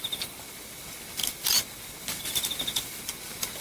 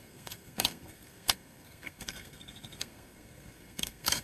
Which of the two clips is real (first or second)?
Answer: first